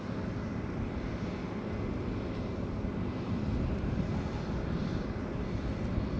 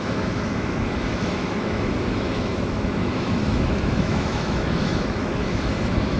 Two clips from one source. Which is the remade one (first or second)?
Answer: second